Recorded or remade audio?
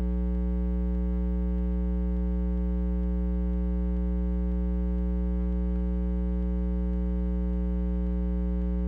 recorded